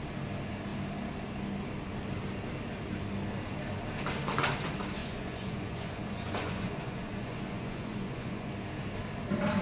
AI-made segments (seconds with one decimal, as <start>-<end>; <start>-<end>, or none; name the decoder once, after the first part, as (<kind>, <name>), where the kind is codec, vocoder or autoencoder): 5.0-8.5 (vocoder, Vocos)